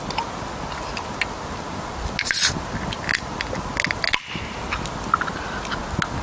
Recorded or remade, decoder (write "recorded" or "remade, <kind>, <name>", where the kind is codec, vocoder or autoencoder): recorded